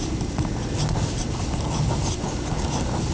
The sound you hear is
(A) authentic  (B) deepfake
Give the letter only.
A